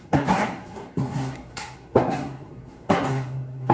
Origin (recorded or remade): remade